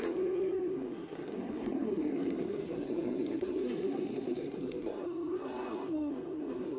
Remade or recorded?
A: remade